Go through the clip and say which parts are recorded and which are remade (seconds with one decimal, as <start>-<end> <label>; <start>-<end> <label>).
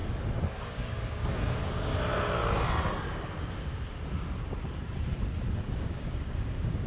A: 0.0-0.5 recorded; 0.5-1.9 remade; 1.9-5.6 recorded; 5.6-6.9 remade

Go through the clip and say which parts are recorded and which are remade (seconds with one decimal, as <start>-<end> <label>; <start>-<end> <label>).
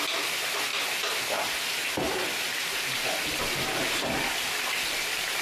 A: 0.0-5.4 recorded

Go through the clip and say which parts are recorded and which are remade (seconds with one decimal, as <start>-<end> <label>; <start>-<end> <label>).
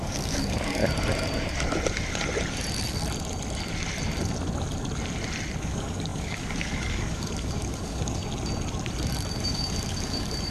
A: 0.0-0.8 remade; 0.8-5.6 recorded; 5.6-8.2 remade; 8.2-9.3 recorded; 9.3-10.5 remade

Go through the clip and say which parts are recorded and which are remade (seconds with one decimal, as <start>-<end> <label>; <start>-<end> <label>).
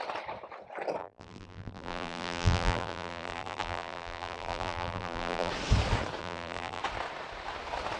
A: 0.0-1.0 recorded; 1.0-5.5 remade; 5.5-6.2 recorded; 6.2-6.8 remade; 6.8-8.0 recorded